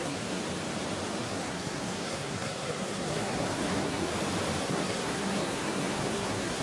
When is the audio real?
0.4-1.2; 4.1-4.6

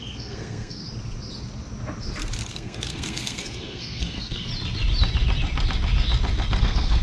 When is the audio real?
0.8-2.5; 4.5-6.6

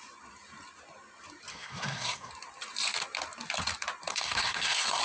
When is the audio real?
0.0-1.5; 2.3-4.1